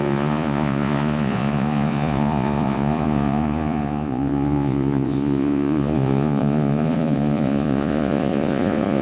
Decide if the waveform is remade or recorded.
remade